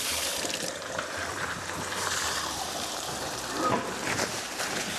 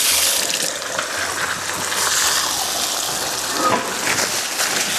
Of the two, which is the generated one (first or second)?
first